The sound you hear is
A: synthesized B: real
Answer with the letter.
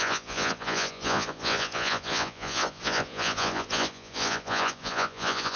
A